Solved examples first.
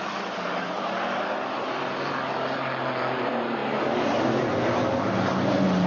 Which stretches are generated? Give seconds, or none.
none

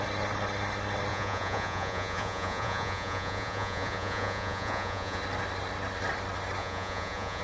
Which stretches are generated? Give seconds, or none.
1.1-5.2; 6.6-7.4

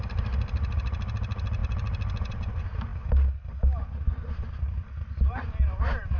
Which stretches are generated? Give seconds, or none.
none

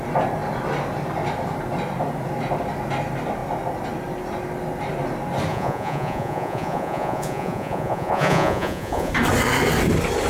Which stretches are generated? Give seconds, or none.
5.5-9.1

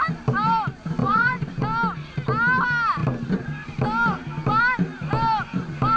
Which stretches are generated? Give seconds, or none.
1.0-1.5

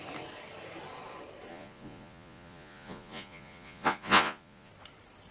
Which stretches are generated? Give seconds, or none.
1.5-4.7

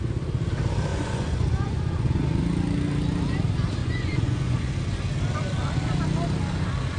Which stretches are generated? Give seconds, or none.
0.9-2.4; 3.8-4.7

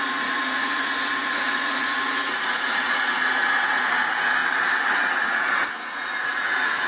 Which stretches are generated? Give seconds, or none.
0.0-4.4; 5.2-6.9